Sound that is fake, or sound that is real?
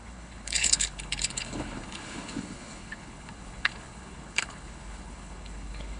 fake